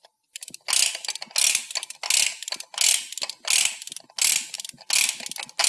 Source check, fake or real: real